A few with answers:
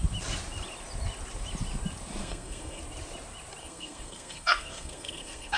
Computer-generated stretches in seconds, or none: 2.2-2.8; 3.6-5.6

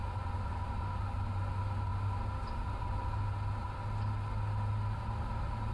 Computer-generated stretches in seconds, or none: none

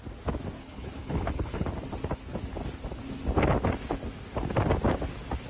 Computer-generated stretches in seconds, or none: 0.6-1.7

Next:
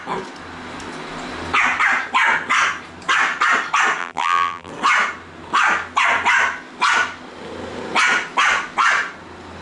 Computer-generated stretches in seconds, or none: 4.0-4.7

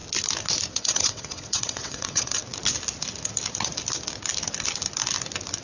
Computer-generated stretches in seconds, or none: 0.7-2.4

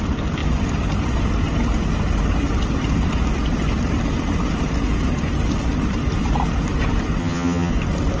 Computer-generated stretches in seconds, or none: 7.2-7.7

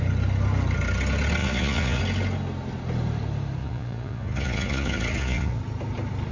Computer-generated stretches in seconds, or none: 1.4-2.0; 3.6-5.6

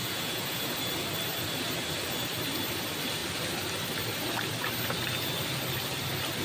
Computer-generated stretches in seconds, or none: 0.0-0.6